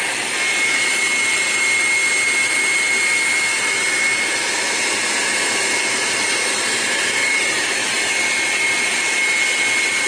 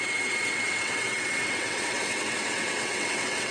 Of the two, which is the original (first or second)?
first